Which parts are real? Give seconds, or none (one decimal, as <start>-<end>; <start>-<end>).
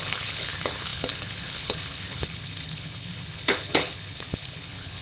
none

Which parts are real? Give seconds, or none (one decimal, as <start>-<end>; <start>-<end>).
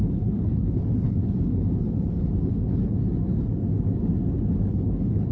3.0-4.7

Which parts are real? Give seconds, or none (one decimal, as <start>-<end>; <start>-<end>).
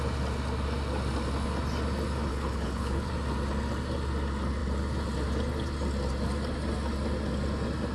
0.0-2.3; 3.1-7.9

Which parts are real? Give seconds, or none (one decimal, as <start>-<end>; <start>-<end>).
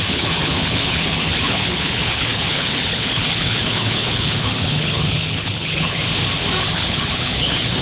6.0-6.6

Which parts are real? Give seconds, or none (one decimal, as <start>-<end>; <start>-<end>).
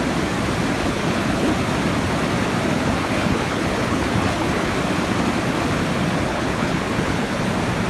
0.0-0.8; 1.5-2.7; 4.7-6.3; 7.5-7.9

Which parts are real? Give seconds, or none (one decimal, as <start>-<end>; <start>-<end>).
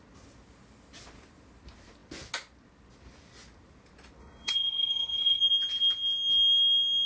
0.0-4.2; 5.4-7.1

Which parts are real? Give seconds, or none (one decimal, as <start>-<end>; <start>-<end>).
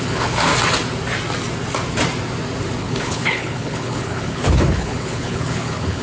0.5-2.8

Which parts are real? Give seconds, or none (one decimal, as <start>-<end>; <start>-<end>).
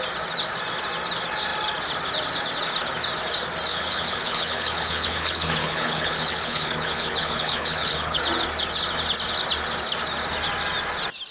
0.0-3.7; 8.2-11.3